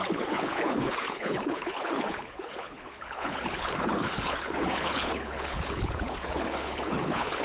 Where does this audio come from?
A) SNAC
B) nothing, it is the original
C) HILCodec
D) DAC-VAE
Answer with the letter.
C